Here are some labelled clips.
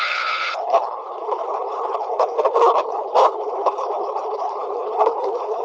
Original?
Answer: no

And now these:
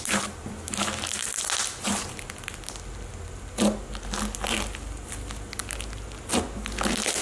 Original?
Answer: yes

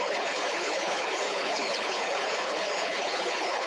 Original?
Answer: no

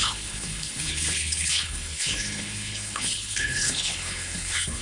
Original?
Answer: no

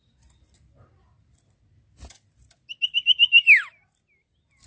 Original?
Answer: yes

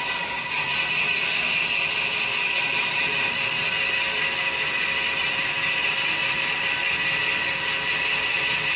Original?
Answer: yes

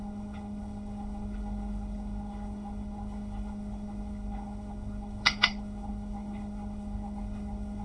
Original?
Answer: no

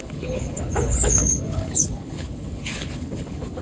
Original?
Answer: no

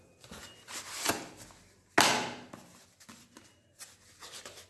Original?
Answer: yes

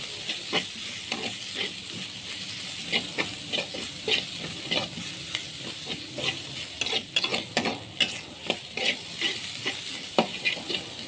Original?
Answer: yes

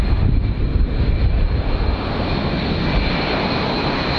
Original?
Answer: yes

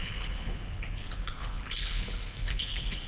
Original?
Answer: no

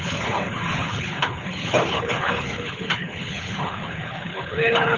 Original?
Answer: no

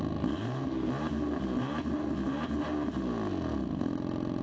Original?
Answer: yes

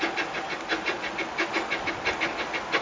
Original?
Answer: yes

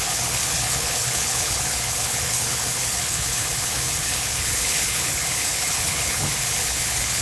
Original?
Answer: no